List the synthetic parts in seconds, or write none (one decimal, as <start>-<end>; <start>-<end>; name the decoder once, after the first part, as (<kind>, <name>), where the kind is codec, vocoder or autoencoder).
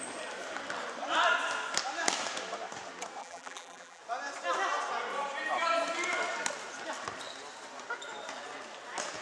3.2-4.0 (vocoder, BigVGAN v2)